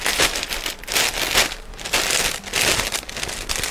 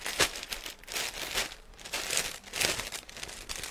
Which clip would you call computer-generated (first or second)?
second